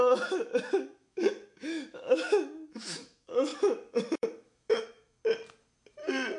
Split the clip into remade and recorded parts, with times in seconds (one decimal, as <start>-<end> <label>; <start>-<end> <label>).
0.0-5.2 remade; 5.2-6.4 recorded